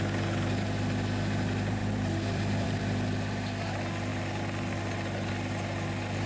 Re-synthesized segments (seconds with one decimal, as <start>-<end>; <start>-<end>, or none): 1.8-2.8